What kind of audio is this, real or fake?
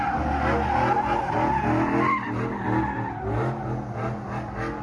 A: real